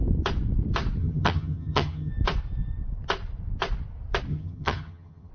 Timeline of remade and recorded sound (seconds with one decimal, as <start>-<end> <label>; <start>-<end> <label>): 0.0-1.0 recorded; 1.0-2.1 remade; 2.1-4.3 recorded; 4.3-5.3 remade